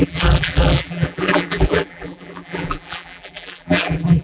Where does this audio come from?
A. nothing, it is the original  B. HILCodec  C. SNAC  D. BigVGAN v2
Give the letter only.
D